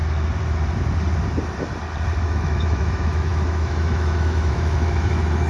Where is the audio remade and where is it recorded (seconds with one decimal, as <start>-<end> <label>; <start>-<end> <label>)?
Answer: 0.0-2.2 recorded; 2.2-5.5 remade